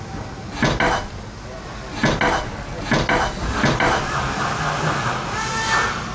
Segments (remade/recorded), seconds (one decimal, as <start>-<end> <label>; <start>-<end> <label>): 0.0-6.1 recorded